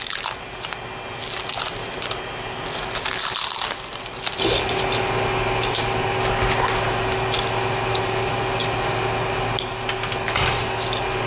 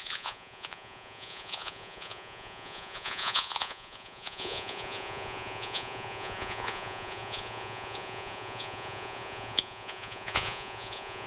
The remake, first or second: second